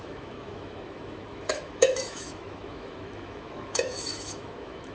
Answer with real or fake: fake